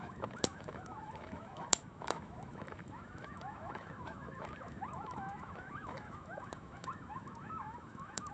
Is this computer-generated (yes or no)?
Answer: yes